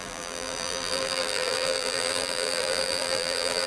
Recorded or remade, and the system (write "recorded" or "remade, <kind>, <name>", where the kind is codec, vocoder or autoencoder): remade, vocoder, BigVGAN v2